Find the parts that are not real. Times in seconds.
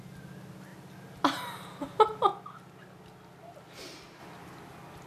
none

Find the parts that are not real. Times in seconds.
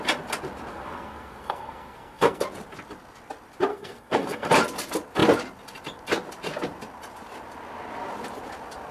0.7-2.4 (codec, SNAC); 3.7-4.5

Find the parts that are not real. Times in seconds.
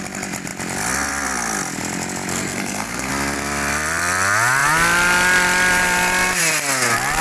2.3-3.1 (codec, SNAC)